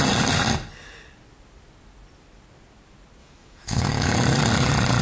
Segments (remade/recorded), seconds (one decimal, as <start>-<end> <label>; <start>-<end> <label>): 0.0-3.2 recorded; 3.2-4.1 remade; 4.1-5.0 recorded